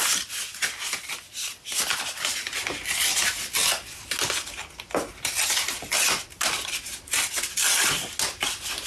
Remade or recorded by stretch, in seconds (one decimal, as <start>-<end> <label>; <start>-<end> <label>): 0.0-8.9 recorded

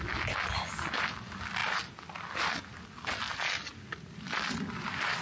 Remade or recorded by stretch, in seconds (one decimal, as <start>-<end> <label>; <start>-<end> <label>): 0.0-5.2 recorded